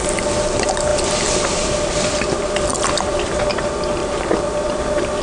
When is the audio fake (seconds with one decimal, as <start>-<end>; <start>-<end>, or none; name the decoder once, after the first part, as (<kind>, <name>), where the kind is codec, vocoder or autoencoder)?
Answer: 0.9-1.9 (vocoder, BigVGAN v2); 2.7-3.4; 4.0-5.2